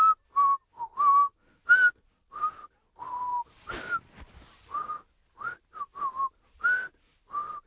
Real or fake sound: real